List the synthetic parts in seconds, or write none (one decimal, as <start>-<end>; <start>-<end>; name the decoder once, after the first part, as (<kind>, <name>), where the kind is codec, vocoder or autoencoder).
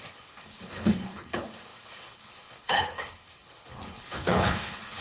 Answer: 0.0-5.0 (codec, HILCodec)